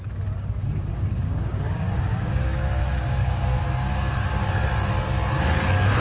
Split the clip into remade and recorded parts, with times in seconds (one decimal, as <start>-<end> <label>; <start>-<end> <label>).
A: 0.0-0.9 recorded; 0.9-3.6 remade; 3.6-6.0 recorded